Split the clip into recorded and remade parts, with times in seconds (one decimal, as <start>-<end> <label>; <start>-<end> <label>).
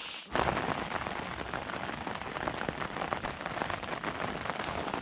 0.0-5.0 recorded